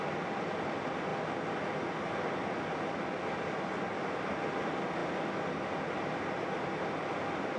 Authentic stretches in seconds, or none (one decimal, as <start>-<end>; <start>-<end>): 0.0-7.6